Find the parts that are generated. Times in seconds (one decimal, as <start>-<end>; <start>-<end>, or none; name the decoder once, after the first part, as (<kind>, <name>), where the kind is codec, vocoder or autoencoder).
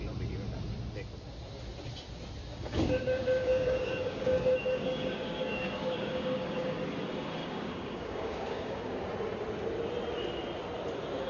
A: 2.5-6.8 (codec, DAC); 7.4-9.0